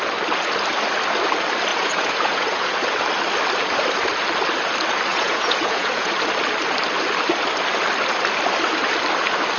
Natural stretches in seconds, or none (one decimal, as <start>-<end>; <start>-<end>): 0.0-1.7; 2.8-5.1; 6.1-9.6